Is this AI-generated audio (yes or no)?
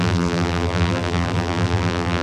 yes